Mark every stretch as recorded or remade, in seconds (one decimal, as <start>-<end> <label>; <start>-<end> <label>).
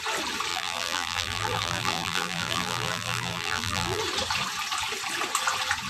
0.0-0.5 recorded; 0.5-4.0 remade; 4.0-5.9 recorded